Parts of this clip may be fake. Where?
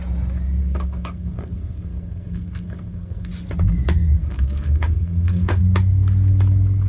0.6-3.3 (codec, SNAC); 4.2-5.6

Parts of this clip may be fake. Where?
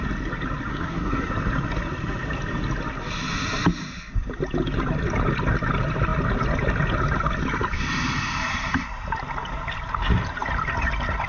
0.7-1.3 (codec, SNAC)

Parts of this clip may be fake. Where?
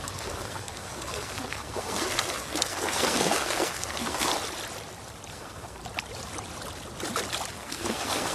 0.0-4.3 (codec, SNAC); 5.3-5.8; 7.5-8.3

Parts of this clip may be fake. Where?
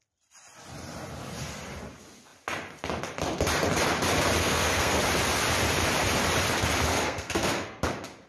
4.4-5.0 (codec, SNAC); 6.9-7.8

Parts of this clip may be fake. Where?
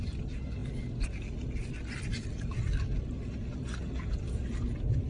none